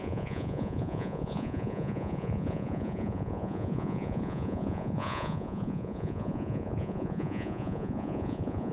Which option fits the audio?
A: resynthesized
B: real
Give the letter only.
A